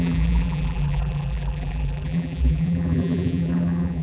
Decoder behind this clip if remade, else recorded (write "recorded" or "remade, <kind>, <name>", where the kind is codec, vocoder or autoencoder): remade, vocoder, BigVGAN v2